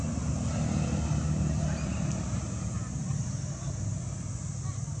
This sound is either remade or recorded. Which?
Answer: recorded